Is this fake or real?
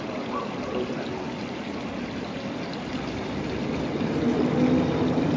real